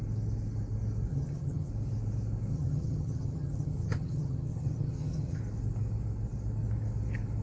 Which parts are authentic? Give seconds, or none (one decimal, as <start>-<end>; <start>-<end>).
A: 0.0-1.1; 1.7-2.5; 5.4-7.4